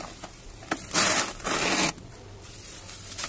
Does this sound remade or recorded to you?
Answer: recorded